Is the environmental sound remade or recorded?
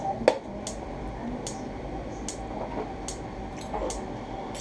recorded